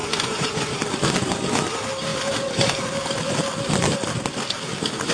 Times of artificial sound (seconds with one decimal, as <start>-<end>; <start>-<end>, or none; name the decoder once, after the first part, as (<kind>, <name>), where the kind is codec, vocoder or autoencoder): 0.0-0.7 (vocoder, Vocos)